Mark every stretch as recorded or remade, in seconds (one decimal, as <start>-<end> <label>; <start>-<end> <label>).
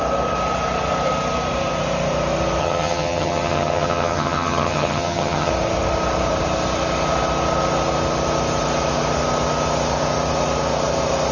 0.0-2.6 recorded; 2.6-5.5 remade; 5.5-11.3 recorded